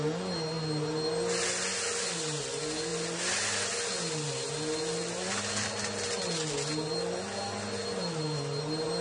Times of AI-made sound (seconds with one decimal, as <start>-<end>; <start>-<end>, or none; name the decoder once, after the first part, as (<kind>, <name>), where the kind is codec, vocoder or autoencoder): none